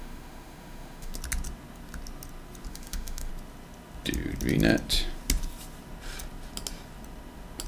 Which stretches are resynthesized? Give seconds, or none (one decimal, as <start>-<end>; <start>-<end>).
0.0-1.1; 2.7-3.3